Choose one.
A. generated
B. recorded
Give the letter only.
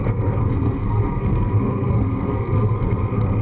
A